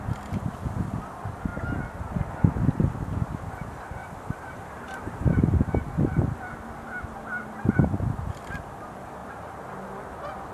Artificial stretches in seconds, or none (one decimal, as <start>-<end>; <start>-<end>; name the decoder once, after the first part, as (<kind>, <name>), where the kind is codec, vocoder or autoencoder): 4.0-5.4 (vocoder, BigVGAN v2); 9.2-9.7